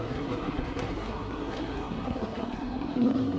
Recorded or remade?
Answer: remade